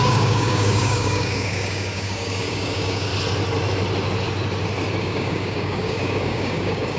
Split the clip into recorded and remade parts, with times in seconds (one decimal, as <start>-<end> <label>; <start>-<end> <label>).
0.0-3.1 remade; 3.1-5.0 recorded; 5.0-7.0 remade